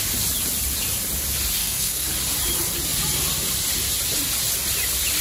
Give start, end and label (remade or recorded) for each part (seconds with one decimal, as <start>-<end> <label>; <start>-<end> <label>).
0.0-1.6 recorded; 1.6-2.1 remade; 2.1-5.2 recorded